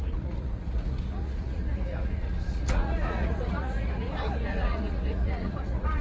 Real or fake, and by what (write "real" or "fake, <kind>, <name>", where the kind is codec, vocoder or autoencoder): fake, vocoder, Vocos